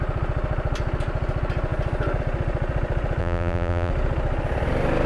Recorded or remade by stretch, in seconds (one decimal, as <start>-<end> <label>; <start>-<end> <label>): 0.0-3.2 recorded; 3.2-3.9 remade; 3.9-5.1 recorded